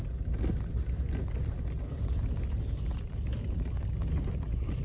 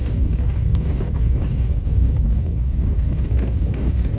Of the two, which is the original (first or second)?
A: first